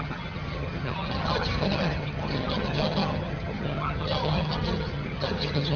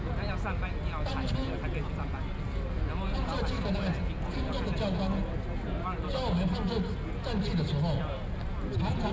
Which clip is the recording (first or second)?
second